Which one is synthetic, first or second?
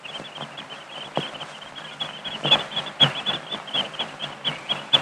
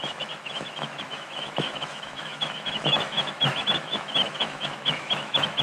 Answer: second